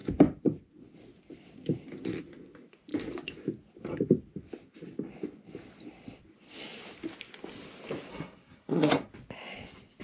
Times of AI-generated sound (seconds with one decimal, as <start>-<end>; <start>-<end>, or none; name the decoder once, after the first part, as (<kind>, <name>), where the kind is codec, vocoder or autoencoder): 8.1-9.1 (codec, SNAC)